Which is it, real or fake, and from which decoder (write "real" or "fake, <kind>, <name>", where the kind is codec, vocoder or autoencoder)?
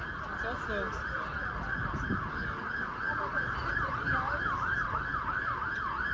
real